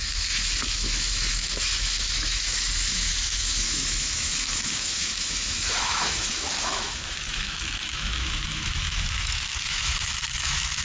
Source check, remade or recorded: remade